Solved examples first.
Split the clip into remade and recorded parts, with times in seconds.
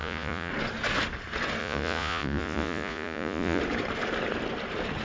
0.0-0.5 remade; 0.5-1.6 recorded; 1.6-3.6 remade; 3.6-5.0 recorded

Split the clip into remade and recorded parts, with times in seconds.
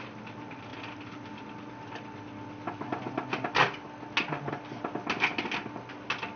0.0-6.4 recorded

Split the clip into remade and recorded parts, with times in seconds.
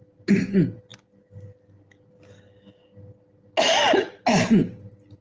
0.0-5.2 recorded